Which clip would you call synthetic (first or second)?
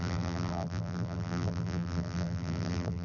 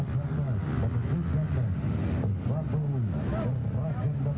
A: first